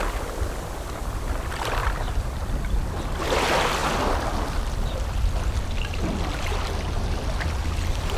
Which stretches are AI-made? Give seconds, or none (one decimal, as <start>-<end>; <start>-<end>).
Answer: none